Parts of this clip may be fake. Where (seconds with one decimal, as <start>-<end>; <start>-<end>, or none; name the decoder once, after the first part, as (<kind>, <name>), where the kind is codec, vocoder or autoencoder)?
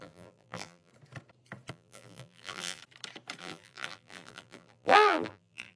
0.0-0.9 (vocoder, BigVGAN v2); 1.7-2.8; 3.4-5.8